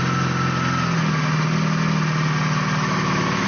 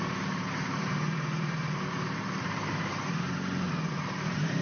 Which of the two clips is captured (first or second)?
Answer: first